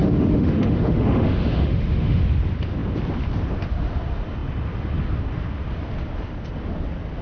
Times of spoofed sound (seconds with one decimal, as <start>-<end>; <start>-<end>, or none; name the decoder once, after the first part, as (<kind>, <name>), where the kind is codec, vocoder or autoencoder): 0.0-2.2 (autoencoder, DAC-VAE)